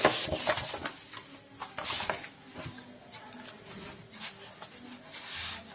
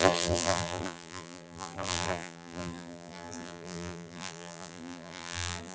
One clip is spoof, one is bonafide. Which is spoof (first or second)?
second